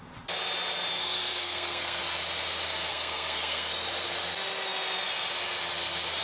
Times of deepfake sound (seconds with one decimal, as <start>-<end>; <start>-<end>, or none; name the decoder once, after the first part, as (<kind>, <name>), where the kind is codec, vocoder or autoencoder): 1.0-2.0 (codec, SNAC); 2.9-3.7